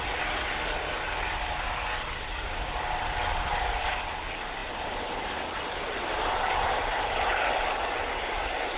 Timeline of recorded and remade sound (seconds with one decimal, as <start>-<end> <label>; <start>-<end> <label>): 0.0-8.8 recorded